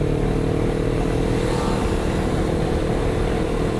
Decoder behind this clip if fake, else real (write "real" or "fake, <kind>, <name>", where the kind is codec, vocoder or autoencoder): real